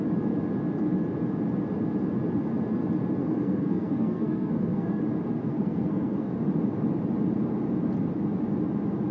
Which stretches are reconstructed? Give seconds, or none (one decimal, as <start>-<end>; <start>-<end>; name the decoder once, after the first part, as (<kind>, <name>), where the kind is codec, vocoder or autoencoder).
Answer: 3.2-5.0 (codec, SNAC); 5.5-6.3